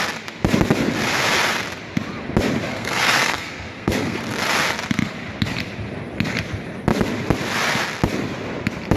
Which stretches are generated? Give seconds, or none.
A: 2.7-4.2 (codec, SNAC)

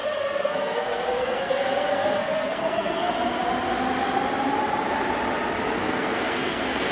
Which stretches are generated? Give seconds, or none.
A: 0.0-3.1 (codec, SNAC); 5.8-6.9

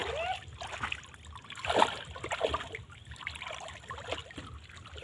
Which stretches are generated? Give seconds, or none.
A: none